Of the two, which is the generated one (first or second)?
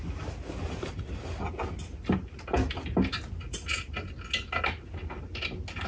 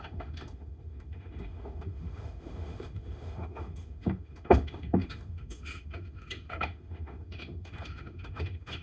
second